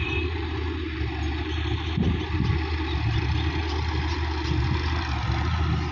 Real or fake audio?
real